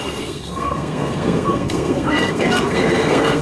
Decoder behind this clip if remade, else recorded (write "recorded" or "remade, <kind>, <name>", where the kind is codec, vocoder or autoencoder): remade, codec, SNAC